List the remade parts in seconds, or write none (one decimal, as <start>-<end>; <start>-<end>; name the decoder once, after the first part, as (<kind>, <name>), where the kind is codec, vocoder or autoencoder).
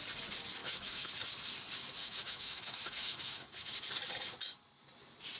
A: 0.6-1.1 (autoencoder, DAC-VAE); 2.0-3.7